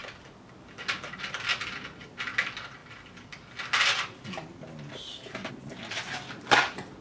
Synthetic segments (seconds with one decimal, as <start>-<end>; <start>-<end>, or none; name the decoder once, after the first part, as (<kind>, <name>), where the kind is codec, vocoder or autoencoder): none